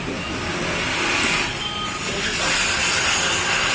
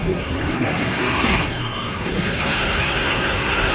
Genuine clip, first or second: first